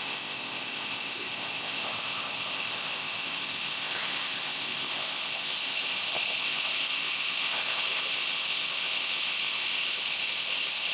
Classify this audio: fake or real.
fake